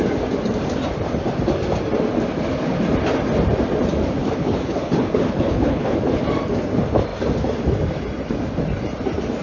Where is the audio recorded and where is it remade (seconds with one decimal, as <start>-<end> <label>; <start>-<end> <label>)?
0.0-4.2 recorded; 4.2-6.2 remade; 6.2-9.4 recorded